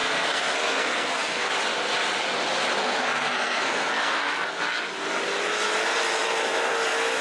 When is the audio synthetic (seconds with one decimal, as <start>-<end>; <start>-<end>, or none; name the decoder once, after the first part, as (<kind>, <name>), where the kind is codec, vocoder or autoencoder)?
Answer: 0.0-1.5 (codec, SNAC); 2.8-4.6